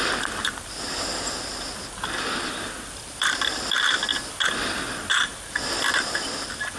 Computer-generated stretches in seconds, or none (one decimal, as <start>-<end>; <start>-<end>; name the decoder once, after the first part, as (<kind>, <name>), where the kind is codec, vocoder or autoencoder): 0.0-4.1 (vocoder, BigVGAN v2); 5.1-6.8